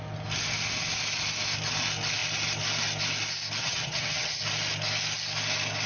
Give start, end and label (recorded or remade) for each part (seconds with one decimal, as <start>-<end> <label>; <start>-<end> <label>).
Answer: 0.0-3.6 recorded; 3.6-4.4 remade; 4.4-5.9 recorded